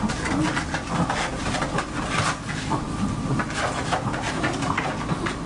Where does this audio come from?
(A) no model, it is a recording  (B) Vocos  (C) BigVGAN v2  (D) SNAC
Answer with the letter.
A